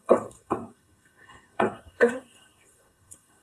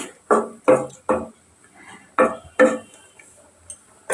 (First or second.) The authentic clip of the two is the second